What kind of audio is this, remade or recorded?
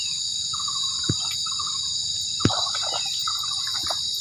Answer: recorded